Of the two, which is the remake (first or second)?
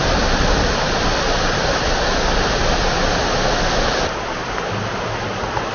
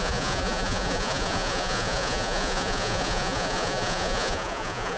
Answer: second